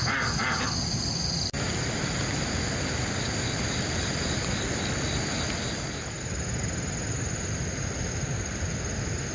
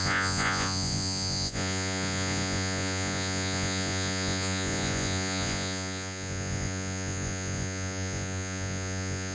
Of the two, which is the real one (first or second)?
first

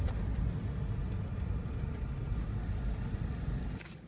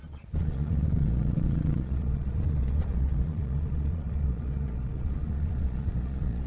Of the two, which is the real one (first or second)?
first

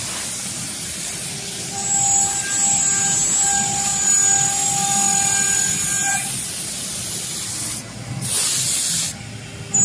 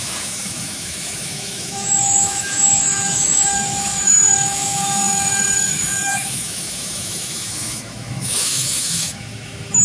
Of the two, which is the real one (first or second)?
first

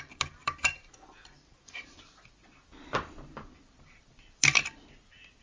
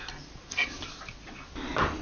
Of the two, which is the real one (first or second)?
second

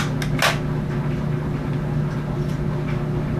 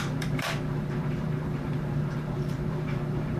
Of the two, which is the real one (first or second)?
first